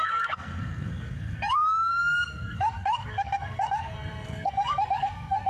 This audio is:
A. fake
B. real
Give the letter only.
A